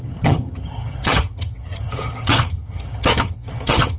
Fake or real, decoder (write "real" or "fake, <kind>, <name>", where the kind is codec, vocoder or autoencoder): fake, vocoder, HiFi-GAN